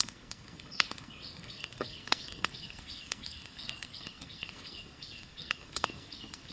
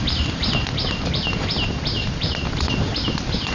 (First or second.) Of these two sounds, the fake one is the first